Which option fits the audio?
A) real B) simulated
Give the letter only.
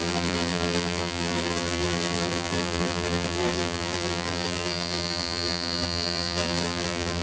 B